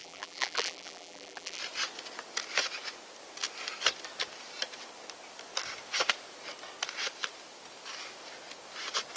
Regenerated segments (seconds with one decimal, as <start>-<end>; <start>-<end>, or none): 0.0-1.6